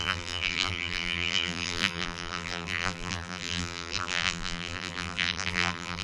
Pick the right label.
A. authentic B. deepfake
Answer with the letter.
B